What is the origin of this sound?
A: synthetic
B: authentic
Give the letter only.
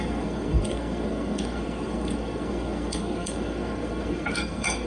A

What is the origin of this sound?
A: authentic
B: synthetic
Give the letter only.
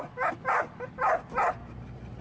A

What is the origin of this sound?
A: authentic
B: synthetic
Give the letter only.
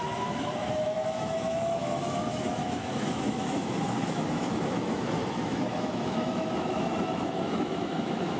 B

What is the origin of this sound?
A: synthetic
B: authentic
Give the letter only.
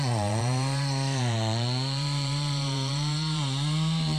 A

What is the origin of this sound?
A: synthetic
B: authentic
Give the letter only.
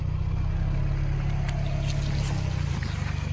B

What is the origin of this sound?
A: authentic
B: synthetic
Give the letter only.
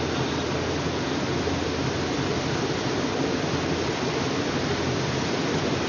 A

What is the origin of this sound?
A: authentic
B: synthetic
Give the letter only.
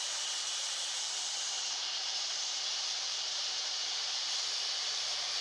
B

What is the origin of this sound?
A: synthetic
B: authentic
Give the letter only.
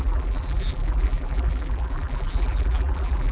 A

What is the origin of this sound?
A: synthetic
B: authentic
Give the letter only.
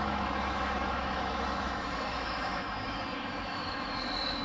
A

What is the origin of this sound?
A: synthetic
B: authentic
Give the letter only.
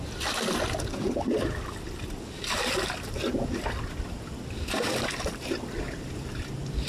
B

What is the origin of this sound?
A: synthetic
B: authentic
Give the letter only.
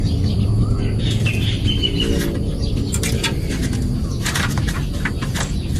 B